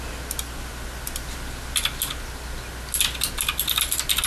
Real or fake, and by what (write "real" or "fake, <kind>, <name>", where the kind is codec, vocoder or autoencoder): real